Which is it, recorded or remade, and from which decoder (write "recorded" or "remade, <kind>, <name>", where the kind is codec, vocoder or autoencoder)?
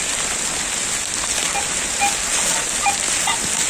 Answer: recorded